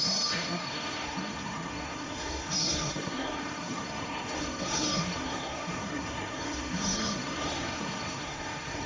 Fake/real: fake